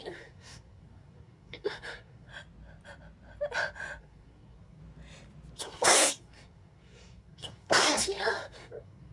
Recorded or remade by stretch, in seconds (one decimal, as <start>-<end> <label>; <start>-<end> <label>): 0.0-2.3 remade; 2.3-4.0 recorded; 4.0-4.8 remade; 4.8-5.6 recorded; 5.6-9.1 remade